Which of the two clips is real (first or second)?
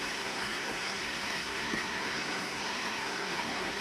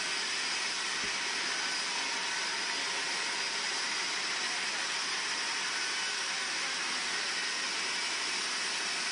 second